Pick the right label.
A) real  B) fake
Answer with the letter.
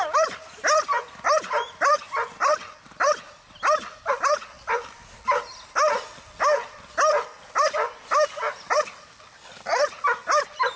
A